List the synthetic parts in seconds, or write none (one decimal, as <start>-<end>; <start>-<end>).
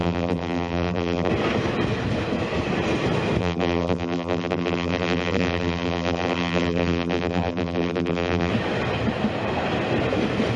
0.0-1.3; 3.4-8.5